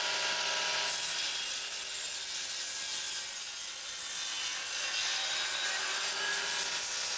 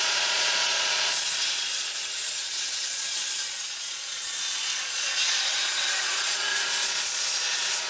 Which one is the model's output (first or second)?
second